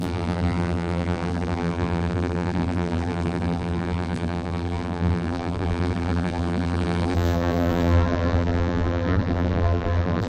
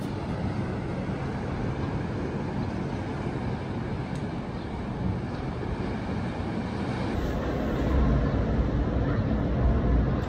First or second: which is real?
second